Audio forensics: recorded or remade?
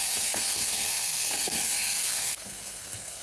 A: remade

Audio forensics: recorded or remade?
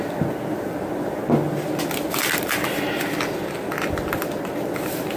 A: recorded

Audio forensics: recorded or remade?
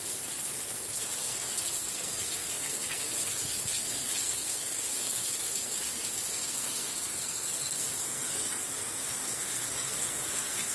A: remade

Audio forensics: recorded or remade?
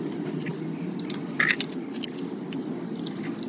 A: recorded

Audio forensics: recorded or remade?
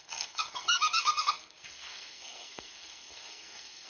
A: remade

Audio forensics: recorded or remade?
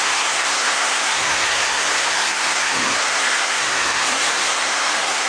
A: remade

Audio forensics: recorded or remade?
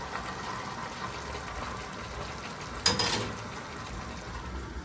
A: recorded